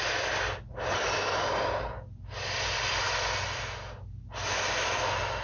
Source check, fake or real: real